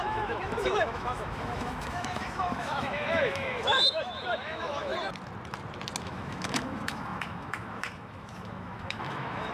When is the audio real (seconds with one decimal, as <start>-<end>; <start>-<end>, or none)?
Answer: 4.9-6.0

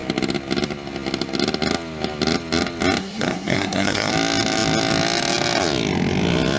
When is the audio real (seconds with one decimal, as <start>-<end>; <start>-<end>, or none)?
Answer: 0.0-3.0; 4.1-6.6

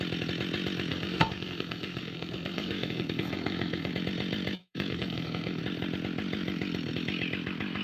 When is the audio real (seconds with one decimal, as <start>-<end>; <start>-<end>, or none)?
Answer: 0.0-0.9; 3.9-4.6; 5.6-7.8

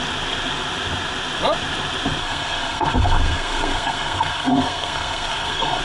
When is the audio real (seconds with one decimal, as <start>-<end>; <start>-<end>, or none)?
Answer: 0.0-2.2

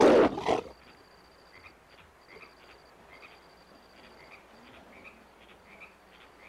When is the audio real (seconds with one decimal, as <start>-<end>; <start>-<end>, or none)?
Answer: 0.0-6.5

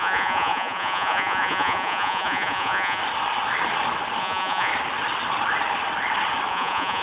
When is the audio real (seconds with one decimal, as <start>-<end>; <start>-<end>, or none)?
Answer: 3.0-4.2; 4.7-6.5

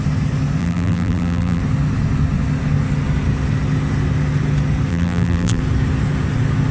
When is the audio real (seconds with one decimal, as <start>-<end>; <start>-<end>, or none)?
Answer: 0.0-0.6; 1.6-4.9; 5.6-6.7